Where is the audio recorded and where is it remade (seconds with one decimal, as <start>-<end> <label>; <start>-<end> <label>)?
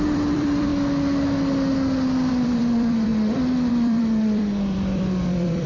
0.0-0.7 remade; 0.7-2.3 recorded; 2.3-3.1 remade; 3.1-3.7 recorded; 3.7-5.7 remade